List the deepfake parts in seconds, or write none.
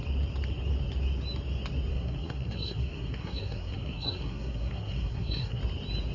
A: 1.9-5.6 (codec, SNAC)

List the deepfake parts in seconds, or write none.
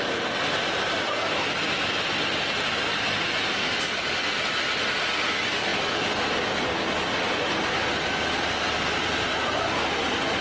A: none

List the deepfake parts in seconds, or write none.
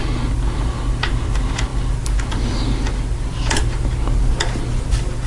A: none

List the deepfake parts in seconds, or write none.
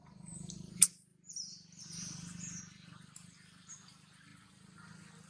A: none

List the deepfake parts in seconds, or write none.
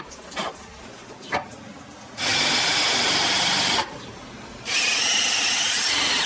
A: none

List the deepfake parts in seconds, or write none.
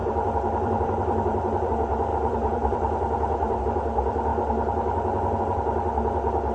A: 0.0-1.7 (vocoder, BigVGAN v2); 2.1-3.6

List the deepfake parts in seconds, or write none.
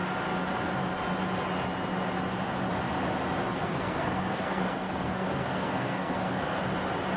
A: 3.5-6.6 (codec, SNAC)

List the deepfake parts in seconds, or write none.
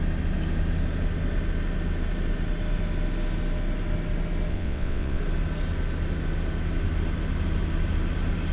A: 4.5-5.2 (vocoder, WaveNeXt)